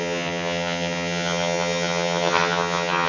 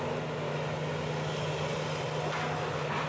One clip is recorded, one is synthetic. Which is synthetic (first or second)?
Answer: first